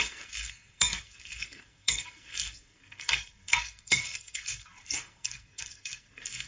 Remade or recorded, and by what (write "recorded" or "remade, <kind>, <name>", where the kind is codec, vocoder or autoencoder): remade, codec, SNAC